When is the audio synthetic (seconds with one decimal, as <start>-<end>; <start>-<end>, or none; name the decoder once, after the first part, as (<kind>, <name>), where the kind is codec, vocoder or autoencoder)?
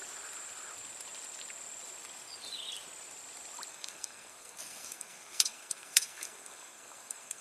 3.7-7.4 (codec, SNAC)